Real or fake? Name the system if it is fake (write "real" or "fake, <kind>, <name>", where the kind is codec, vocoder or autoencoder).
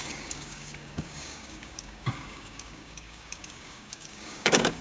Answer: fake, codec, DAC